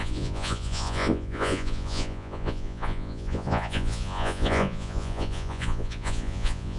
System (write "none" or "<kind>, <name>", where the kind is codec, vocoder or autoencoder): vocoder, Vocos